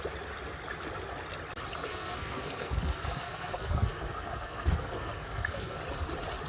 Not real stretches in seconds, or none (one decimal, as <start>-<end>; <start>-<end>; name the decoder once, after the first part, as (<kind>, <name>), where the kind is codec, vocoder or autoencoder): 1.9-5.8 (codec, SNAC)